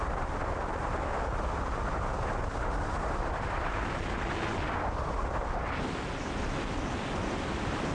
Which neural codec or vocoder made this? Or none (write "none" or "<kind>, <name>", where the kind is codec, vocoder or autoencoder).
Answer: none